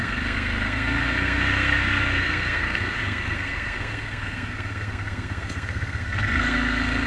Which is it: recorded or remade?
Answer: remade